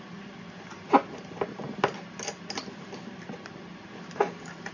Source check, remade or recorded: recorded